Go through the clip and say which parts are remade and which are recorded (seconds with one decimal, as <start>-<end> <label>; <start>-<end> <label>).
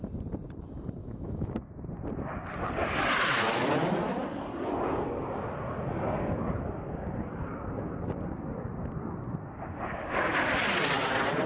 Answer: 0.0-1.0 recorded; 1.0-1.7 remade; 1.7-11.5 recorded